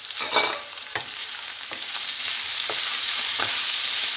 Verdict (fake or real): fake